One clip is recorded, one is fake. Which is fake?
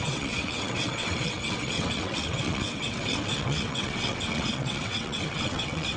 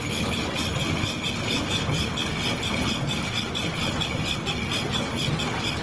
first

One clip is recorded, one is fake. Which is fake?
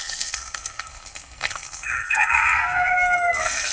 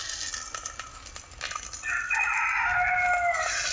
first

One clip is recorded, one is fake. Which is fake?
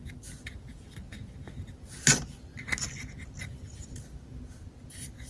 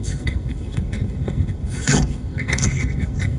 second